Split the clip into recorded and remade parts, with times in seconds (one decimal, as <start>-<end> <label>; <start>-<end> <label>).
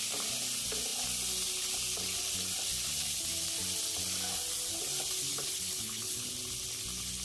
0.0-5.3 recorded; 5.3-6.3 remade; 6.3-7.2 recorded